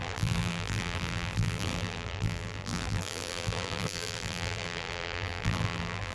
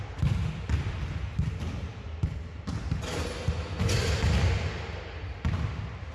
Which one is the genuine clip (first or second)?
second